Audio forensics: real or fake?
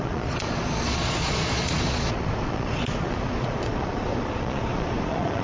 fake